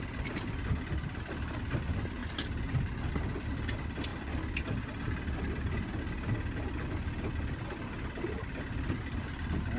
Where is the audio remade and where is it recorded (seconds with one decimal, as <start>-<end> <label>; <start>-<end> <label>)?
0.0-9.8 recorded